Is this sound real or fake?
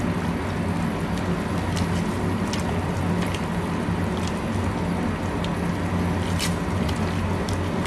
real